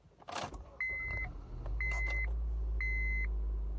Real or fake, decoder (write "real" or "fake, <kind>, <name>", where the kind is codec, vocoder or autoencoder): real